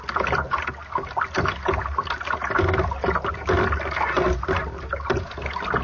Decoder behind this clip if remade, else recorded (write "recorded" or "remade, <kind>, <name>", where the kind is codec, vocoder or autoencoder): recorded